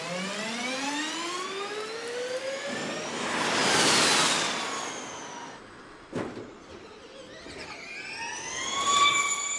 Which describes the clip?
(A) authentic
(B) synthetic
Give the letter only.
A